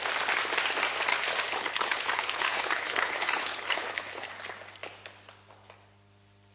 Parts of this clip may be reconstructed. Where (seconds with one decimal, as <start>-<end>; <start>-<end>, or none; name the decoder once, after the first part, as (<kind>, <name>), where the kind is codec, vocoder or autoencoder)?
1.1-4.3 (codec, HILCodec)